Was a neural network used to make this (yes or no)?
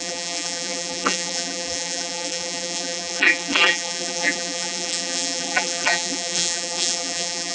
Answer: yes